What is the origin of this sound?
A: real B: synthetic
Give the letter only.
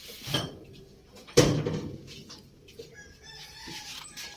A